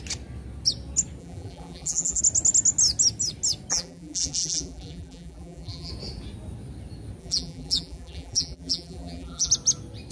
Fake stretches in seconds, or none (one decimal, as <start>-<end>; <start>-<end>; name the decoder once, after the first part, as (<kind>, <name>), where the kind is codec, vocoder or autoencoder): 1.2-2.2 (vocoder, BigVGAN v2); 3.7-5.9; 7.2-9.5